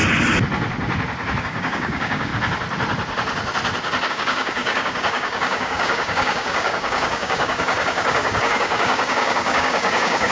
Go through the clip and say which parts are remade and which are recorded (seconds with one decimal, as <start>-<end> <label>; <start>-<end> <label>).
0.0-1.4 recorded; 1.4-2.3 remade; 2.3-4.1 recorded; 4.1-10.3 remade